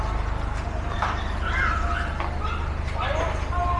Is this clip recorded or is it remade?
recorded